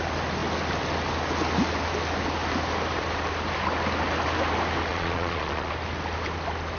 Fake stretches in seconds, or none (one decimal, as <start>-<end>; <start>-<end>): 4.9-5.7